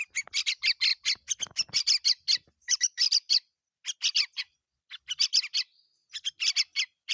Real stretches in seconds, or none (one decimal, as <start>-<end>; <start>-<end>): 0.0-7.1